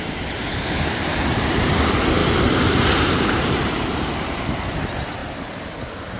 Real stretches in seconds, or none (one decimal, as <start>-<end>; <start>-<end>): 0.0-1.1; 1.7-2.2; 4.4-6.2